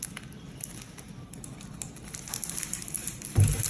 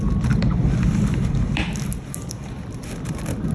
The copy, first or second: second